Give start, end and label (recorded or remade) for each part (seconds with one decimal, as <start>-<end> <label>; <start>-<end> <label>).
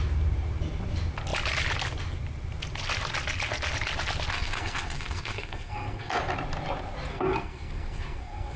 0.0-4.3 recorded; 4.3-6.2 remade; 6.2-7.1 recorded; 7.1-8.6 remade